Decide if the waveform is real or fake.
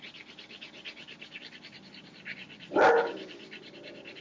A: real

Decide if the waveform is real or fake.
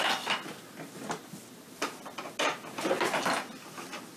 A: real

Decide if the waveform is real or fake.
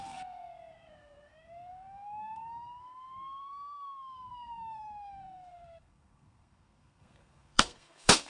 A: fake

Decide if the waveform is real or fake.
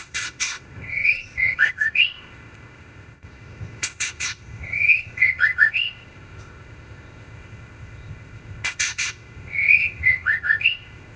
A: fake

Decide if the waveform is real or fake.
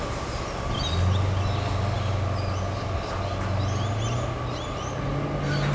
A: real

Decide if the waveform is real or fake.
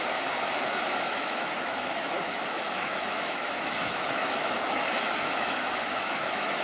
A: fake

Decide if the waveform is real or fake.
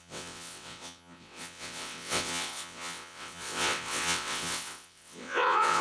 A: fake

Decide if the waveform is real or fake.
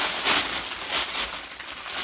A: real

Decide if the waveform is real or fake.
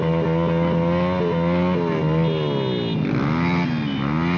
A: real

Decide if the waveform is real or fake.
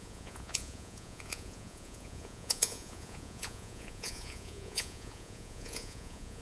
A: fake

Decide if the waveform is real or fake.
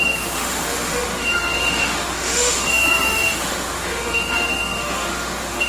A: fake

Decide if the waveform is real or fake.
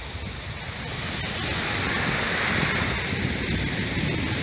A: real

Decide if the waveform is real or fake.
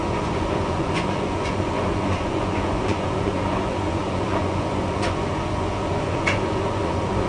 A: fake